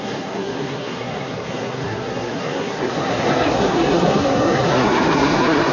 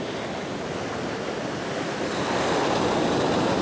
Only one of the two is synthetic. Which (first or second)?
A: first